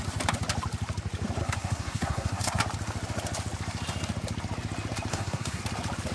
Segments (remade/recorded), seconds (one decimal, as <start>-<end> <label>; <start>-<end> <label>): 0.0-1.4 recorded; 1.4-2.6 remade; 2.6-5.1 recorded; 5.1-5.6 remade; 5.6-6.1 recorded